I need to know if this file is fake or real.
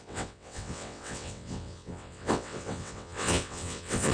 fake